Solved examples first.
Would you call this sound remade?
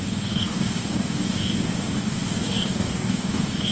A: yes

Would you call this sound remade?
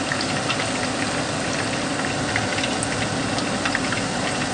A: no